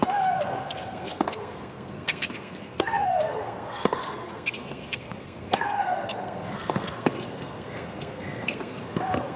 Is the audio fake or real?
fake